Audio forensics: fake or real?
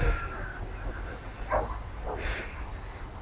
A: real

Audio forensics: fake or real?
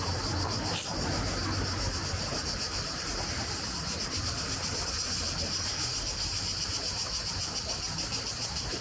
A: real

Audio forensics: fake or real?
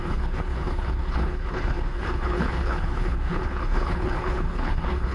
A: fake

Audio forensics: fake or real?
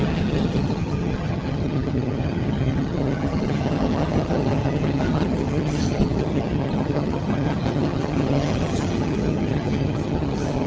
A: fake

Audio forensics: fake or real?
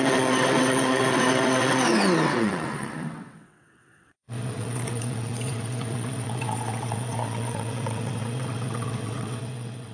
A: fake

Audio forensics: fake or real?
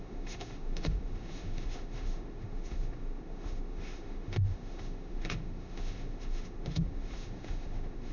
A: fake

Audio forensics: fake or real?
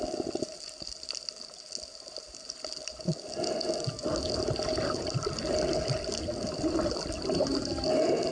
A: real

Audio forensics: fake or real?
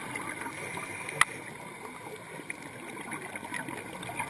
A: real